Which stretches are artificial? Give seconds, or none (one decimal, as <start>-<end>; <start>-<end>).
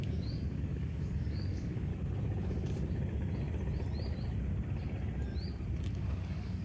0.0-1.9; 5.9-6.6